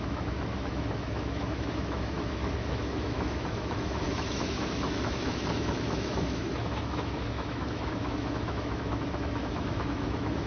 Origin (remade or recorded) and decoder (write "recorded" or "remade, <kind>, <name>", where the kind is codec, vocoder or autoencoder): remade, autoencoder, DAC-VAE